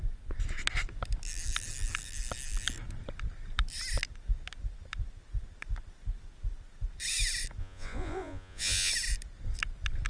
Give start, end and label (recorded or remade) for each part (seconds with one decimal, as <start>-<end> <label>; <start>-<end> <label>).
0.0-7.6 recorded; 7.6-8.9 remade; 8.9-10.1 recorded